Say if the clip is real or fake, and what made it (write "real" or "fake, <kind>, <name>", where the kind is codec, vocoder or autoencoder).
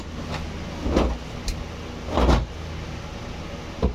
real